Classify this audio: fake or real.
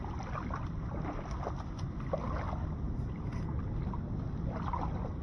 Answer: real